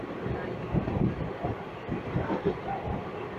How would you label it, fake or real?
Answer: real